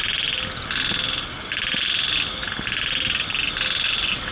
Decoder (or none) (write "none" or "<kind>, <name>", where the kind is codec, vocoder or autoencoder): none